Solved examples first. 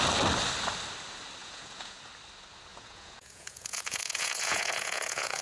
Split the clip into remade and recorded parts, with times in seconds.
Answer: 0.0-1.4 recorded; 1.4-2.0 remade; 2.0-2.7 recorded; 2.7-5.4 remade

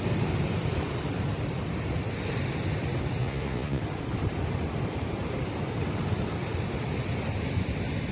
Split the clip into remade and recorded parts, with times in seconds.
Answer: 0.0-3.2 recorded; 3.2-3.8 remade; 3.8-8.1 recorded

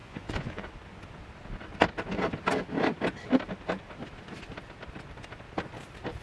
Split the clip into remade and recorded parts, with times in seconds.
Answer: 0.0-0.7 remade; 0.7-6.2 recorded

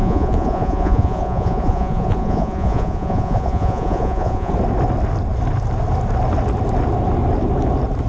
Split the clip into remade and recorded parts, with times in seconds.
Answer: 0.0-4.5 remade; 4.5-8.1 recorded

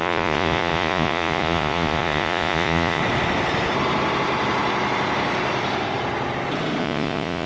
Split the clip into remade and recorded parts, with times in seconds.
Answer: 0.0-3.0 remade; 3.0-6.8 recorded; 6.8-7.5 remade

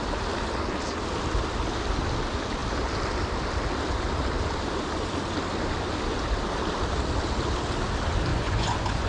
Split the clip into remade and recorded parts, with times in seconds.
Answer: 0.0-8.3 recorded; 8.3-9.1 remade

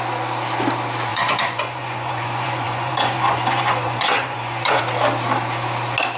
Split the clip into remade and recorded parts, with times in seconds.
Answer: 0.0-1.1 recorded; 1.1-4.8 remade; 4.8-6.2 recorded

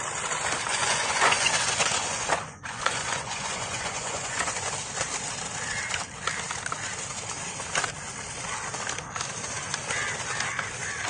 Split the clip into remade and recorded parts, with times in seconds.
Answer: 0.0-0.7 recorded; 0.7-4.7 remade; 4.7-11.1 recorded